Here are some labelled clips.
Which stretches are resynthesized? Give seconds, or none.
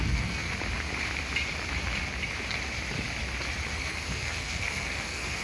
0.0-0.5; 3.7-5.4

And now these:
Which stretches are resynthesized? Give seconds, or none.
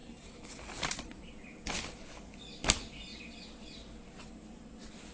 0.0-1.3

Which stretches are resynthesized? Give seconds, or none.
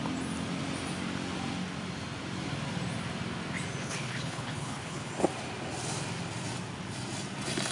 3.8-5.1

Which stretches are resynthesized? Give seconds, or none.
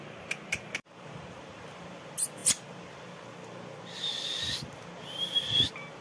none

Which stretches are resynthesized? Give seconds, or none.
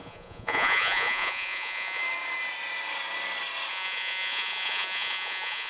0.0-2.0; 3.7-5.7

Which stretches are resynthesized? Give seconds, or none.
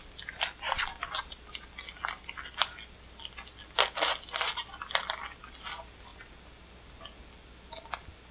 none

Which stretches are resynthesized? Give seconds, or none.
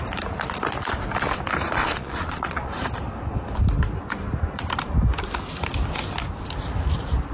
1.8-2.7